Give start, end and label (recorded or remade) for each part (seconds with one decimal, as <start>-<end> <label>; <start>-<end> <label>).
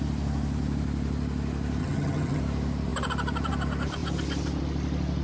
0.0-1.8 recorded; 1.8-2.4 remade; 2.4-5.2 recorded